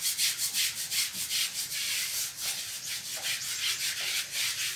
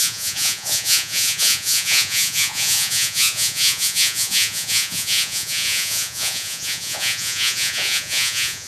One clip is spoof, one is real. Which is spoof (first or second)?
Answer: second